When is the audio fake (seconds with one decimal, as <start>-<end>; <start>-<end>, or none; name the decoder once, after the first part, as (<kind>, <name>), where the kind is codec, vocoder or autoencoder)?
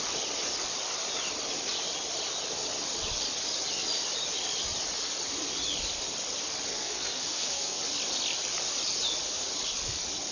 6.7-7.8 (codec, SNAC)